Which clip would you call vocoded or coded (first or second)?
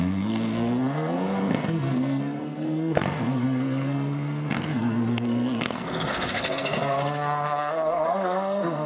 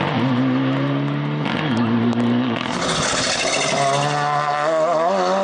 first